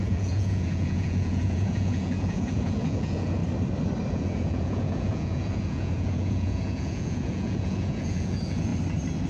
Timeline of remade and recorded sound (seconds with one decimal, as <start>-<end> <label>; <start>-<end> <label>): 0.0-3.4 remade; 3.4-4.1 recorded; 4.1-8.7 remade; 8.7-9.3 recorded